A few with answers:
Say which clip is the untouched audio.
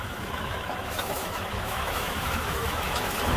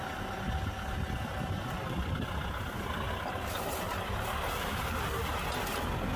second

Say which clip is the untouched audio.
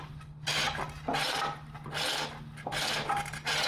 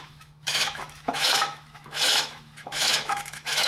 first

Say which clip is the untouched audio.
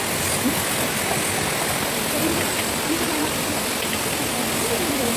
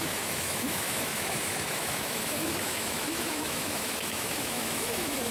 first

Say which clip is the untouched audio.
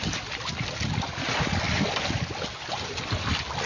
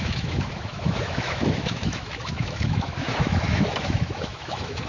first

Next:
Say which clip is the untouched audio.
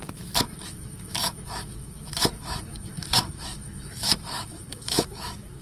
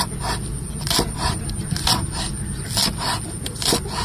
second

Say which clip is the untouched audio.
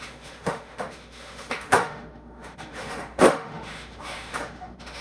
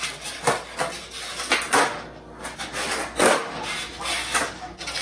second